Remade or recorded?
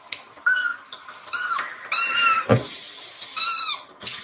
recorded